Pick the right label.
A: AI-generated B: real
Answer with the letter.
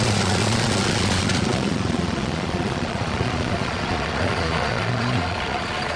A